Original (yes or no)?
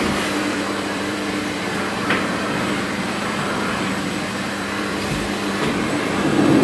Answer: no